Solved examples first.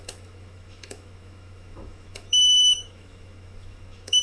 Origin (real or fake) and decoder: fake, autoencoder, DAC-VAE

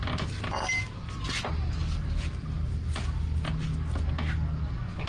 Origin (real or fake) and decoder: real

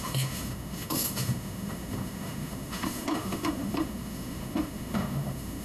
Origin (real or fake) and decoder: fake, autoencoder, DAC-VAE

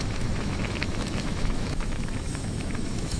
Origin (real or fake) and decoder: fake, autoencoder, DAC-VAE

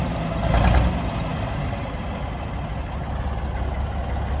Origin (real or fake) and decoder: real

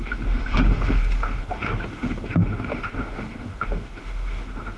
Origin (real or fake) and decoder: fake, autoencoder, DAC-VAE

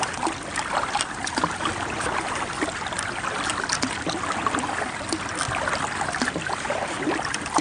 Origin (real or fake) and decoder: real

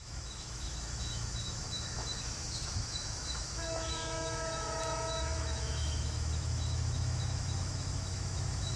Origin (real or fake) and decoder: fake, autoencoder, DAC-VAE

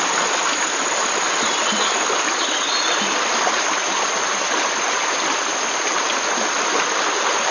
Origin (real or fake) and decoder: real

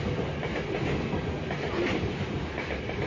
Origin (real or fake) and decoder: real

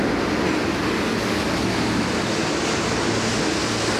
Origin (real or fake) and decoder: real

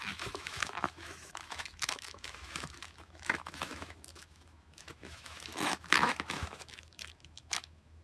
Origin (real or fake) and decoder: fake, autoencoder, DAC-VAE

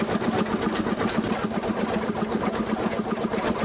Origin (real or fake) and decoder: real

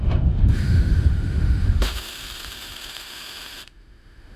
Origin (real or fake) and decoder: fake, autoencoder, DAC-VAE